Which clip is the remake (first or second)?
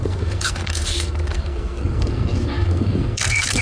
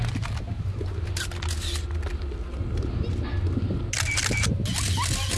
first